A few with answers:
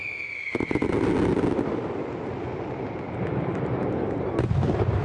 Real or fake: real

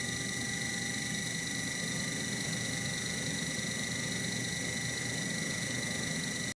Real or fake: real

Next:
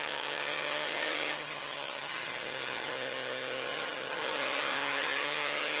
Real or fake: fake